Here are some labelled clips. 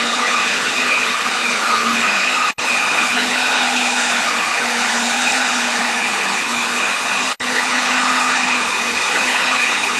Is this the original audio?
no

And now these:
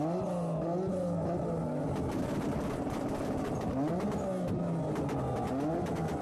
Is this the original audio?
yes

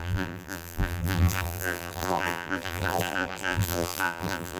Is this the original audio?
no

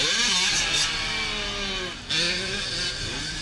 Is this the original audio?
yes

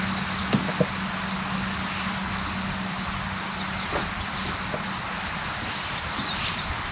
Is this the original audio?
yes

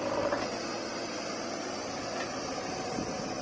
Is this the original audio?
yes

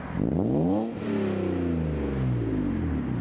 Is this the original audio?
yes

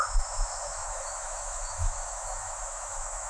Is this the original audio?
no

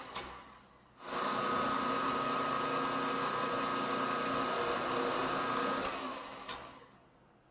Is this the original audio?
yes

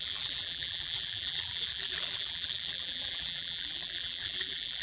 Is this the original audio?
no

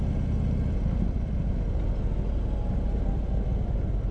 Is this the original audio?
yes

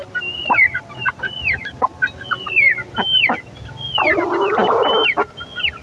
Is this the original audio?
yes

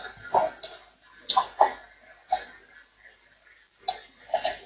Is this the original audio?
yes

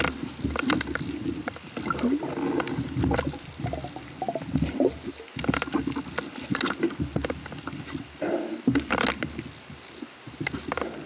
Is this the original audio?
yes